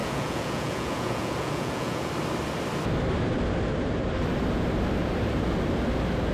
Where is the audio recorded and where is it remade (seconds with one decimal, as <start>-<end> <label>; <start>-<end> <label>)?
0.0-2.1 remade; 2.1-6.3 recorded